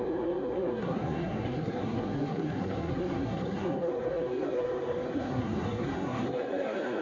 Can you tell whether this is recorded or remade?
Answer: remade